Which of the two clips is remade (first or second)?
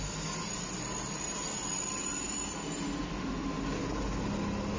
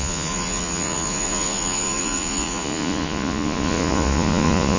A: second